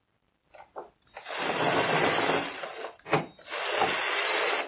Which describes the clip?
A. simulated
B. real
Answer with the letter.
B